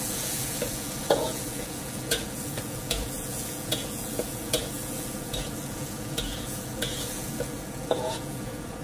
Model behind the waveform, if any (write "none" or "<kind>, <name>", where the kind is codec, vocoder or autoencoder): vocoder, Vocos